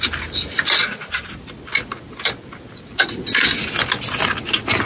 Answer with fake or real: real